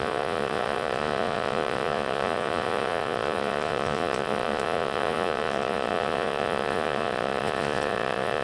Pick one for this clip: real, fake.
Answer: fake